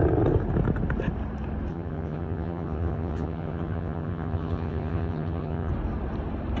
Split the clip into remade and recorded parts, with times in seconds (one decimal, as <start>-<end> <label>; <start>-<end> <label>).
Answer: 0.0-1.7 recorded; 1.7-5.7 remade; 5.7-6.6 recorded